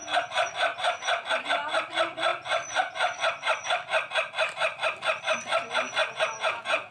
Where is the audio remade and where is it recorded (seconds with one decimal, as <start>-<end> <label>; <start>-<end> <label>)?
0.0-6.0 recorded; 6.0-6.9 remade